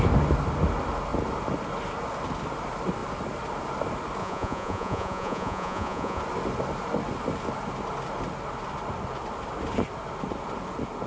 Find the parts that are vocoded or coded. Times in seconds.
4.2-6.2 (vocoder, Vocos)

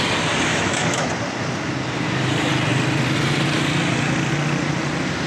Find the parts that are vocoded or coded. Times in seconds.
0.5-1.1 (autoencoder, DAC-VAE)

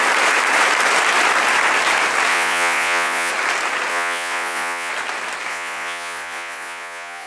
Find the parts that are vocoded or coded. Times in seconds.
2.3-3.3 (vocoder, Vocos); 3.9-4.9; 5.5-7.3

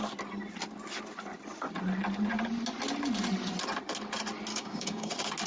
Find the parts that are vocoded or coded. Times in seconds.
4.5-5.1 (codec, DAC)